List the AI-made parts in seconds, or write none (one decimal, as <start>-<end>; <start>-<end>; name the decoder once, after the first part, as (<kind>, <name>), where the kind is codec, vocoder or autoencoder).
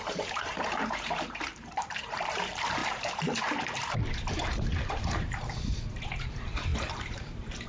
0.0-7.7 (vocoder, BigVGAN v2)